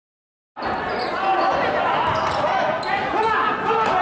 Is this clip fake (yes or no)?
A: no